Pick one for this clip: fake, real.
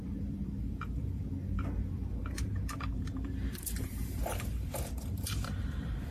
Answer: fake